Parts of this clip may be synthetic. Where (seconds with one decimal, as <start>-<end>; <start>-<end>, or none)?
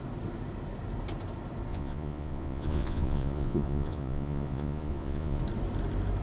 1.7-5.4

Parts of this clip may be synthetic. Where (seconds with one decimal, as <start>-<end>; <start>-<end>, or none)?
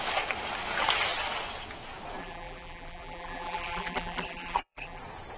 2.2-5.0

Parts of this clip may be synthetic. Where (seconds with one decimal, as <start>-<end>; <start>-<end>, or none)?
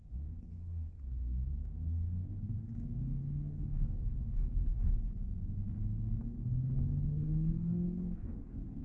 0.0-4.8; 6.2-8.8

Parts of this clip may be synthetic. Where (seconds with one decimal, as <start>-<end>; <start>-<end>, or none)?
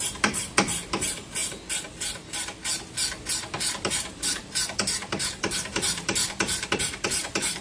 0.0-1.4; 3.9-7.6